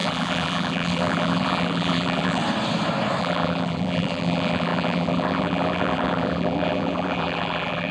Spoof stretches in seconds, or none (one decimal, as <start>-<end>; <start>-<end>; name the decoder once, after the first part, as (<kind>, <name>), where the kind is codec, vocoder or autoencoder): 0.0-2.4 (vocoder, BigVGAN v2); 3.2-7.9